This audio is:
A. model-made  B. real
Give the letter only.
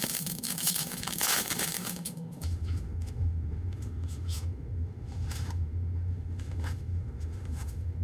A